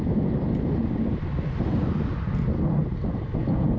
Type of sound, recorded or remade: recorded